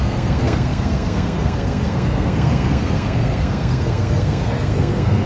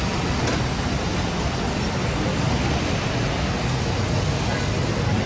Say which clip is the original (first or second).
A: second